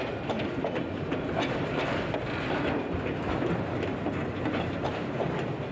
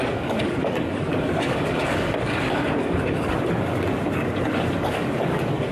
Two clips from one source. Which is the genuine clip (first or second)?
first